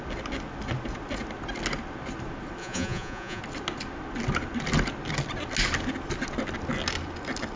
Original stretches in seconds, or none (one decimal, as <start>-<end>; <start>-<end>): 0.0-2.6; 3.4-7.6